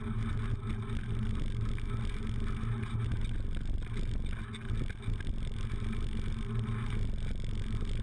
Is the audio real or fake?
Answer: real